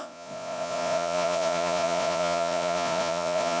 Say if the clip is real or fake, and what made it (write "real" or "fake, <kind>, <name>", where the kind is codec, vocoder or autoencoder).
fake, vocoder, Vocos